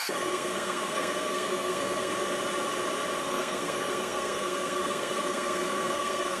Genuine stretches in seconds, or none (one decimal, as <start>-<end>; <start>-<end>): 2.1-3.2